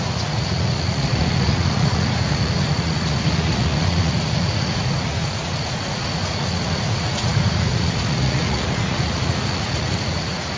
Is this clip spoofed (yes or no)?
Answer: yes